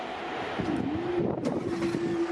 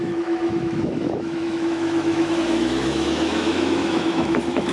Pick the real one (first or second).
first